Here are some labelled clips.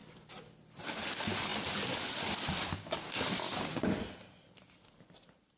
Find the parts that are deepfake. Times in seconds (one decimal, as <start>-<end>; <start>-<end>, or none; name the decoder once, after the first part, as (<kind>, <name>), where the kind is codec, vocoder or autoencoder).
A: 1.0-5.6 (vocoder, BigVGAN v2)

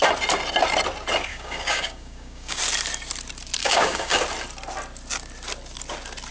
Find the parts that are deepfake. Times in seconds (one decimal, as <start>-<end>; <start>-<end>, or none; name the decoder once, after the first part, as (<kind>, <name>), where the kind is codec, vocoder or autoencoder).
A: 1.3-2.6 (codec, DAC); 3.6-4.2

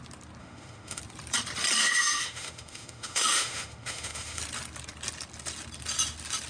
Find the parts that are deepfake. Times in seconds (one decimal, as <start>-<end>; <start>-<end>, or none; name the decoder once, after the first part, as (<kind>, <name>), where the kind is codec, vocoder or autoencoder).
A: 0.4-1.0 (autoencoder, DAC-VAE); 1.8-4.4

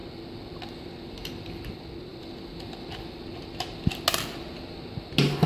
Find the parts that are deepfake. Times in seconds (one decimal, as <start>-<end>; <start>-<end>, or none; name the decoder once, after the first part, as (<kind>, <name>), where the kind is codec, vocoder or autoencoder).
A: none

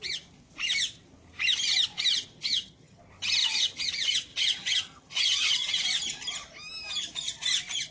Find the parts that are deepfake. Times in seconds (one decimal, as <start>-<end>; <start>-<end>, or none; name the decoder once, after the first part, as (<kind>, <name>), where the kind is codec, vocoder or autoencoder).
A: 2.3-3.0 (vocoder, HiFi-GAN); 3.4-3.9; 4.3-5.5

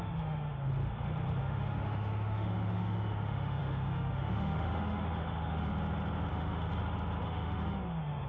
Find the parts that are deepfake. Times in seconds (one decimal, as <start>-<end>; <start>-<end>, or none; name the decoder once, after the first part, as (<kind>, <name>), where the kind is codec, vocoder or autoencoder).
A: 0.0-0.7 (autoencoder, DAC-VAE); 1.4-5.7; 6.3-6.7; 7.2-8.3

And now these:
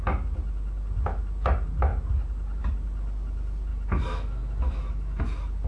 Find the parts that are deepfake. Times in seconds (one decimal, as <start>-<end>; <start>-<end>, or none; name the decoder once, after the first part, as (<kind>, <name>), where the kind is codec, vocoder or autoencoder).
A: 3.7-5.2 (autoencoder, DAC-VAE)